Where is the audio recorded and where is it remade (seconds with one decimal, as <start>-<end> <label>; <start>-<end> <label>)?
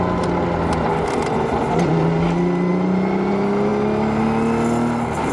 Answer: 0.0-5.3 recorded